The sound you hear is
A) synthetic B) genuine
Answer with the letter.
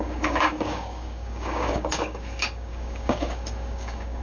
A